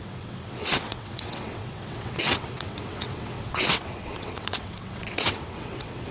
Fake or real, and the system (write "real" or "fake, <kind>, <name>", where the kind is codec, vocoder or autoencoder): fake, vocoder, WaveNeXt